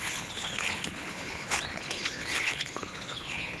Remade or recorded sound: remade